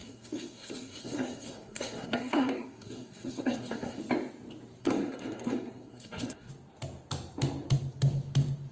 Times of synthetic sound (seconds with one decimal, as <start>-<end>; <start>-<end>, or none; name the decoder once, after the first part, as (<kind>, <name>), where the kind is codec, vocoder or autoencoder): 0.0-4.0 (codec, SNAC); 4.8-6.5